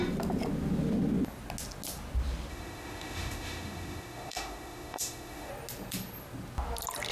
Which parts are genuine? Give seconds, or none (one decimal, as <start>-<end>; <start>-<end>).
0.0-2.5; 5.5-7.1